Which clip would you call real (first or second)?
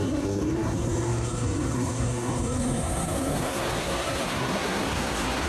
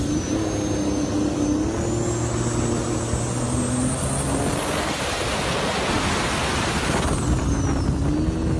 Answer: second